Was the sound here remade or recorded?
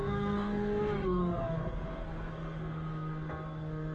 remade